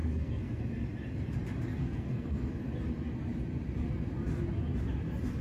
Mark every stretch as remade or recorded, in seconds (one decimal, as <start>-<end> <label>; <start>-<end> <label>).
0.0-0.6 remade; 0.6-1.7 recorded; 1.7-2.5 remade; 2.5-5.4 recorded